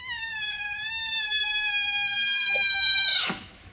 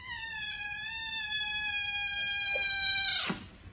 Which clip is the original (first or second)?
second